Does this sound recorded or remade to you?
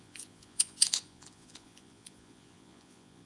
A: remade